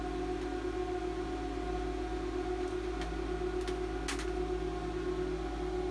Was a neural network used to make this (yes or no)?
no